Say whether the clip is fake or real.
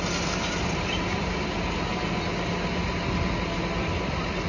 real